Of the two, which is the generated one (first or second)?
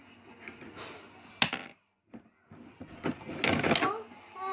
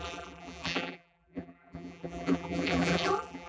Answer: second